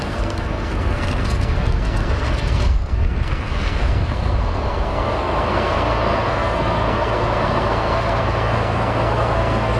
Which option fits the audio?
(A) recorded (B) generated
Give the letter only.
B